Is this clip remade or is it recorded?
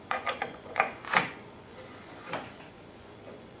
remade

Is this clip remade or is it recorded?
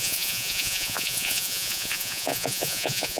remade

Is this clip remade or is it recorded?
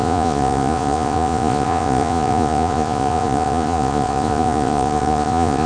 remade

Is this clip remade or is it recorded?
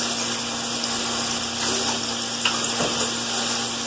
recorded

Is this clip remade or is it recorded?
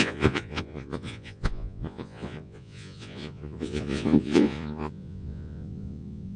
remade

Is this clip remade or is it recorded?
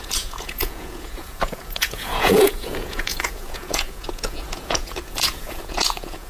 remade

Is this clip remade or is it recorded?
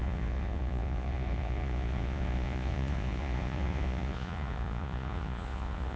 remade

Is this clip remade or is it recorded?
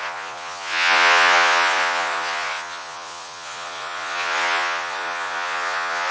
remade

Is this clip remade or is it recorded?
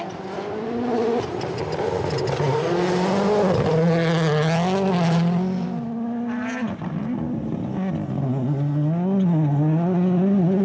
recorded